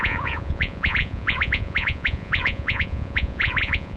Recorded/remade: remade